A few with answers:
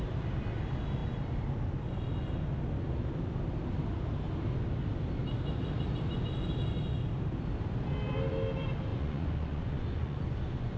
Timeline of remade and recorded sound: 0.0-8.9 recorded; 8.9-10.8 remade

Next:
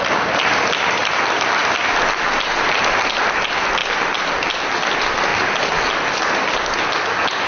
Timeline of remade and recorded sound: 0.0-1.6 recorded; 1.6-2.1 remade; 2.1-7.5 recorded

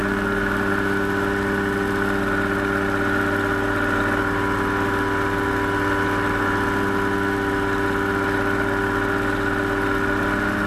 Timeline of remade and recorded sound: 0.0-10.7 recorded

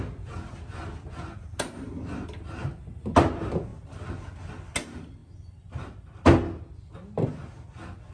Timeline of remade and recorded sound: 0.0-8.1 recorded